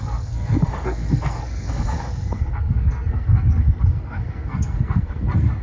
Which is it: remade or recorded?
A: remade